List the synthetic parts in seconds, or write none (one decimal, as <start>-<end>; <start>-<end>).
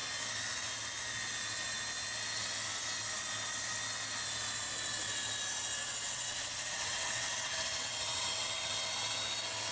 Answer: 5.8-8.8